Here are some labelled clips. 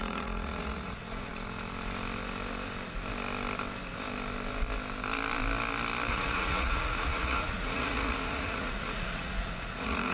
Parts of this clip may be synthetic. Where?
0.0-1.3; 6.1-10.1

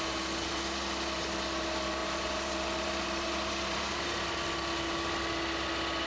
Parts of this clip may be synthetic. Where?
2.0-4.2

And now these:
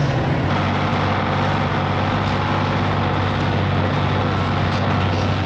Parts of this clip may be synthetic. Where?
0.0-0.5